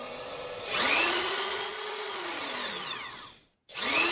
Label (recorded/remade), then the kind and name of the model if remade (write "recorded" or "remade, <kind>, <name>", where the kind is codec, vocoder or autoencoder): remade, vocoder, Vocos